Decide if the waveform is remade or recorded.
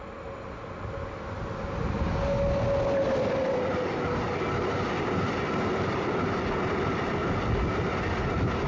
recorded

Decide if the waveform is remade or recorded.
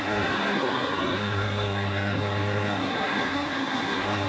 remade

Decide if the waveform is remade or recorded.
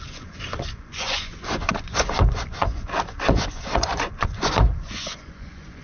remade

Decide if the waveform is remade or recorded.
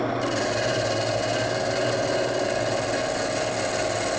recorded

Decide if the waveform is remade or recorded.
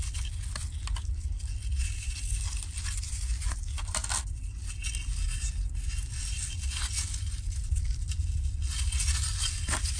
recorded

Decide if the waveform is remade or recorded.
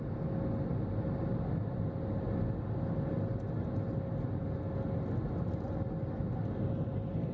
recorded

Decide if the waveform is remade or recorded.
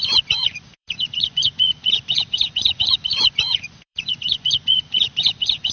remade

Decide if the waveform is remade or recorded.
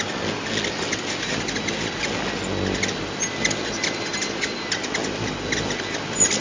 recorded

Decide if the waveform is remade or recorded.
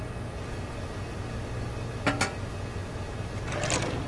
recorded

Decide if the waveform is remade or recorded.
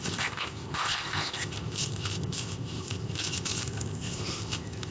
remade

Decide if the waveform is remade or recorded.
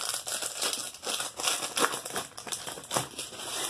recorded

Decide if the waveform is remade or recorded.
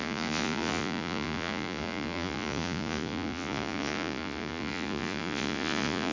remade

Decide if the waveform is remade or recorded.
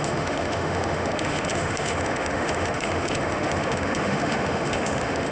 remade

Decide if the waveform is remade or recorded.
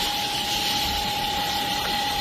recorded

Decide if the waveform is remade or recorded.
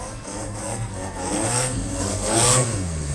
remade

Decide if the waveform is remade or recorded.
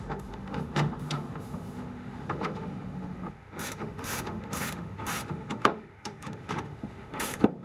remade